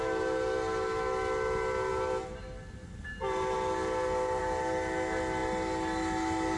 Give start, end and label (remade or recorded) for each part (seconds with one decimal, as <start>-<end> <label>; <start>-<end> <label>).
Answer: 0.0-6.6 recorded